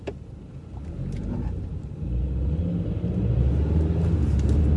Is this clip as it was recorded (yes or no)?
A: yes